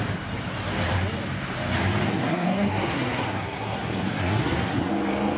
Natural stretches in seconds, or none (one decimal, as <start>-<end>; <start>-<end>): 0.0-2.1; 4.9-5.4